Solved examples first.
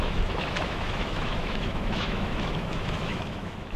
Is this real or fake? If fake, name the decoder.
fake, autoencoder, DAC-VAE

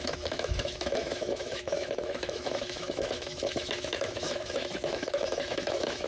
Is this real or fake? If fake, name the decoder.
fake, autoencoder, DAC-VAE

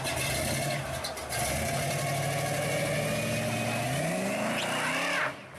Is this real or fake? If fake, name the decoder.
real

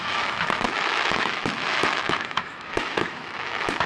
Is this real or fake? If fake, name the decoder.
fake, autoencoder, DAC-VAE